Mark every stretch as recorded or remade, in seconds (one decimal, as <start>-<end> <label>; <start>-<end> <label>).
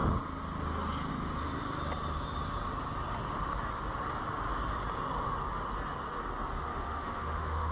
0.0-6.7 recorded; 6.7-7.7 remade